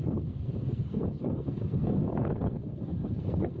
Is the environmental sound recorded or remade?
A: remade